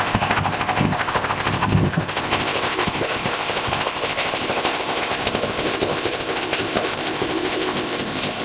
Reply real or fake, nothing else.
fake